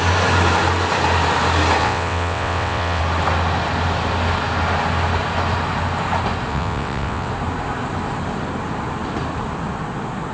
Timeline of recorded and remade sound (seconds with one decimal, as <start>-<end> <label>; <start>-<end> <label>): 0.0-1.8 recorded; 1.8-3.0 remade; 3.0-6.5 recorded; 6.5-7.3 remade; 7.3-10.3 recorded